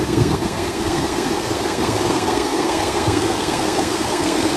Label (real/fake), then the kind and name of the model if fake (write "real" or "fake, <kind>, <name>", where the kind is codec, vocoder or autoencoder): fake, codec, SNAC